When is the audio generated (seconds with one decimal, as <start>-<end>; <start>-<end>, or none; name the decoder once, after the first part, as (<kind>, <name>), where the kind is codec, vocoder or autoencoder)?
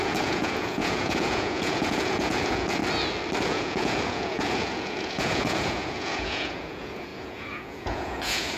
0.0-2.8 (vocoder, Vocos); 3.5-8.6